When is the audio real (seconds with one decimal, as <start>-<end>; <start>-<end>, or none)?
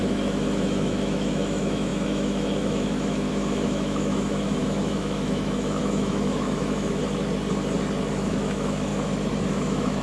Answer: 7.0-8.1; 8.9-9.5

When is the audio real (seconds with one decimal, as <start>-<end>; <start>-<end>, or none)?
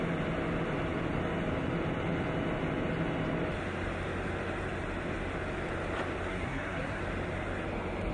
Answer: 0.0-6.3; 7.0-8.1